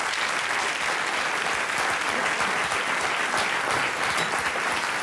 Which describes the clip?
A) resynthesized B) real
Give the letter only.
B